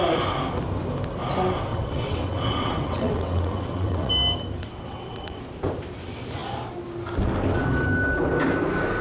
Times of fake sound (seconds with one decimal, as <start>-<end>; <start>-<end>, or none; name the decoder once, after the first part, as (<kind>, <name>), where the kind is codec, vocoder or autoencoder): 1.7-4.1 (vocoder, WaveNeXt); 4.6-5.4